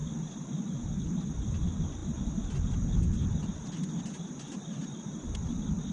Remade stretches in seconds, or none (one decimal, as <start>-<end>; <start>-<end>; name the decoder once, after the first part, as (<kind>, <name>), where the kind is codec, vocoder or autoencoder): none